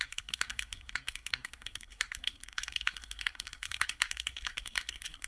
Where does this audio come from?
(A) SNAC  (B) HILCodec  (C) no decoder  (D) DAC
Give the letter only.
A